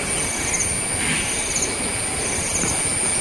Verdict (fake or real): real